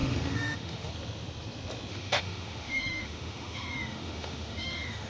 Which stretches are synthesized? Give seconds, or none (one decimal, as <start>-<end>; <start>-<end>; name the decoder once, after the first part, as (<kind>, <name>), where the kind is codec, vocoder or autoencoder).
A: 0.0-0.9 (autoencoder, DAC-VAE); 1.9-5.1